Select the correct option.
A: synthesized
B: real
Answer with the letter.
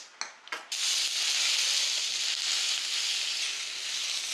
B